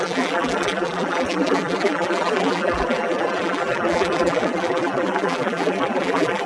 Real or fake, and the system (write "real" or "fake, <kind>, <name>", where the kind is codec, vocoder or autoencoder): fake, vocoder, BigVGAN v2